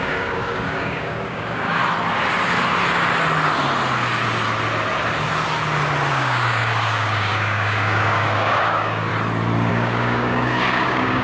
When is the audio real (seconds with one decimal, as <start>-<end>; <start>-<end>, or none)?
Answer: 1.8-6.1; 9.1-9.7